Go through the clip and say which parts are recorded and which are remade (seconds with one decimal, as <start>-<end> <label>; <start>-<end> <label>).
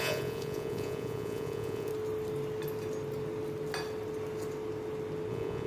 0.0-1.9 remade; 1.9-5.3 recorded; 5.3-5.7 remade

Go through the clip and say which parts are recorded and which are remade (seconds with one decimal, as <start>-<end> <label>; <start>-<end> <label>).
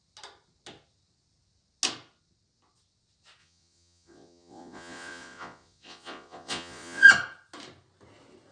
0.0-3.4 recorded; 3.4-7.1 remade; 7.1-8.5 recorded